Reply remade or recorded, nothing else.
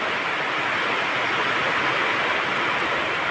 recorded